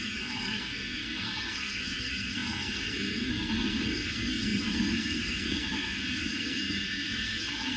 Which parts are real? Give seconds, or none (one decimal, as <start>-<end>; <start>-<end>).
none